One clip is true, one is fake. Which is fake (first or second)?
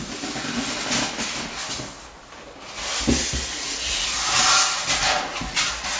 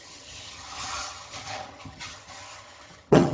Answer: second